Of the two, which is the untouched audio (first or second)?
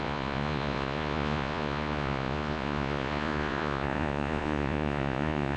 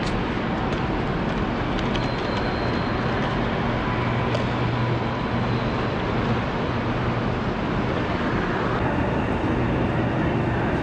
second